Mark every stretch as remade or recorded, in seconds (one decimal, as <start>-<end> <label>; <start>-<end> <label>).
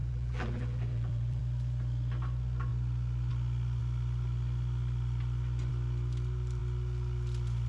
0.0-1.4 remade; 1.4-7.7 recorded